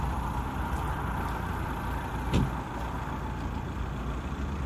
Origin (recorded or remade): recorded